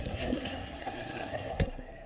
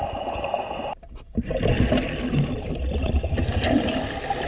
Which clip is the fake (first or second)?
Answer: first